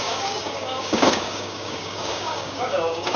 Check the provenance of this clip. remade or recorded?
remade